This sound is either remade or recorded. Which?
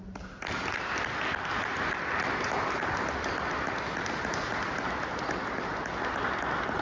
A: recorded